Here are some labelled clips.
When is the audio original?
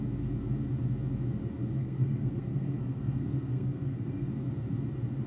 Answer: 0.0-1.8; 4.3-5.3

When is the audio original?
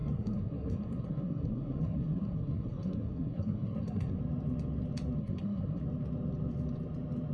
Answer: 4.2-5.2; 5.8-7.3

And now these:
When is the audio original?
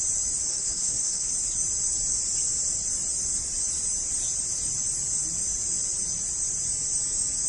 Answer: 0.0-0.5; 1.3-7.5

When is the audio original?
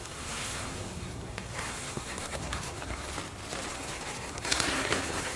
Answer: 3.1-3.7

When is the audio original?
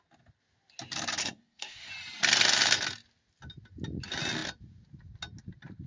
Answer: 0.0-1.2; 1.9-5.9